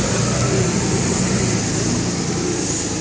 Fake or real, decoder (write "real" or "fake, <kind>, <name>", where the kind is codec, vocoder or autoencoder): real